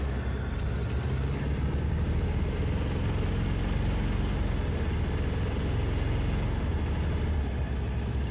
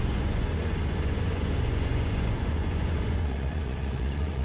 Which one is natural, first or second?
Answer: first